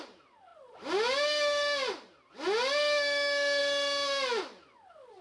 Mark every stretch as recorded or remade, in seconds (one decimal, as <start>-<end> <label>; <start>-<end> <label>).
0.0-5.2 recorded